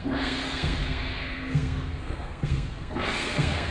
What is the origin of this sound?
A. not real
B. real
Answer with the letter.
A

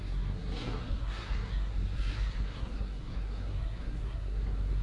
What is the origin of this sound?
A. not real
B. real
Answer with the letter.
A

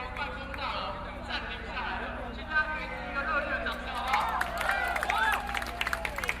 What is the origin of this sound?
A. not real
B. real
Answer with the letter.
B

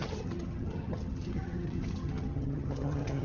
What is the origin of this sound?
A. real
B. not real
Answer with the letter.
B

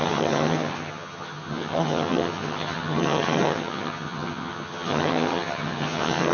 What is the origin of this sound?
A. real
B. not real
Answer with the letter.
B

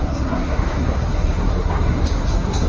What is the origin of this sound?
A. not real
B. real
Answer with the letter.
A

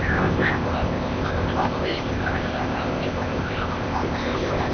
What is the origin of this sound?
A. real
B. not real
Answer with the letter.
B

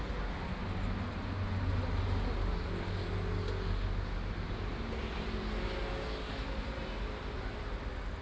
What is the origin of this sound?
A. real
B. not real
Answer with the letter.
A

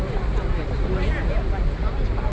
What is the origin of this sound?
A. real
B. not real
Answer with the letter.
A